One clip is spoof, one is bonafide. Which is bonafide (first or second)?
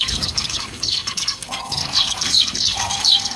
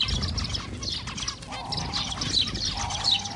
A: second